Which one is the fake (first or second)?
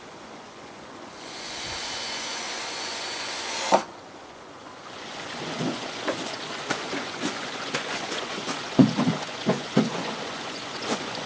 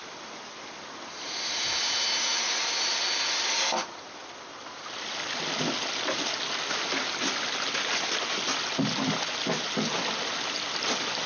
first